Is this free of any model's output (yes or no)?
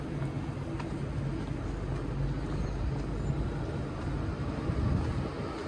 yes